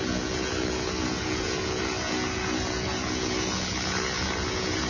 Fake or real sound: fake